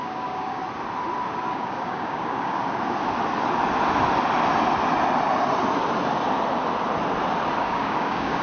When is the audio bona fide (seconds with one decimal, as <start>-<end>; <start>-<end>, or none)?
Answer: 0.6-1.5; 2.6-7.6